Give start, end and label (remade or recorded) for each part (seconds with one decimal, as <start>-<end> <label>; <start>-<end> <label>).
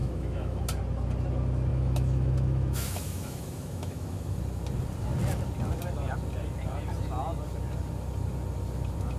0.0-0.6 remade; 0.6-1.7 recorded; 1.7-4.4 remade; 4.4-9.2 recorded